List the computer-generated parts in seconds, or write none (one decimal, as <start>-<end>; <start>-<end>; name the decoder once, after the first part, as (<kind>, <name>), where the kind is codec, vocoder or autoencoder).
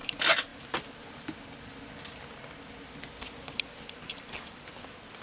none